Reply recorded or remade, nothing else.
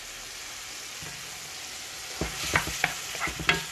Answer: recorded